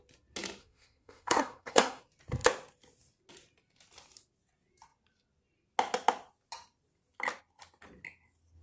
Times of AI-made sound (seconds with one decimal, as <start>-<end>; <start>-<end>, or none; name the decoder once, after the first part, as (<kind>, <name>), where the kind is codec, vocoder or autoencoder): 0.6-2.0 (codec, SNAC)